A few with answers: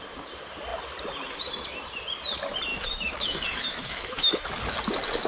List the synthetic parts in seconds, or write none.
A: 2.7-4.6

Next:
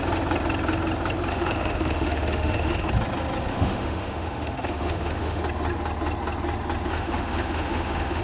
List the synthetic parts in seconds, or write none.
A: 1.3-2.9; 3.5-5.4; 6.9-8.2

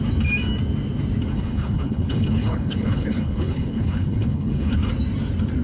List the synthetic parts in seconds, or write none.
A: 1.3-4.7

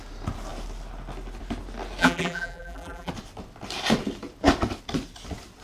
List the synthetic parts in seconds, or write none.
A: 2.0-3.1